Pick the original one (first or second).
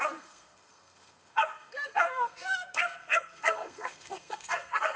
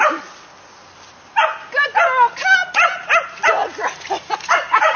second